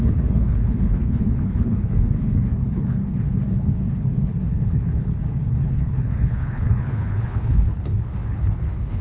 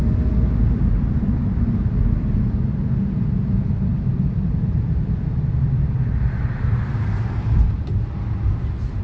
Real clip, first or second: second